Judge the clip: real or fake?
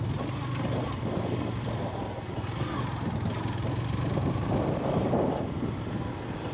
real